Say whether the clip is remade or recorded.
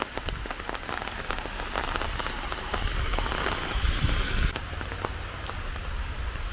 recorded